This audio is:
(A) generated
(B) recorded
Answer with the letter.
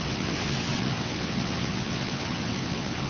A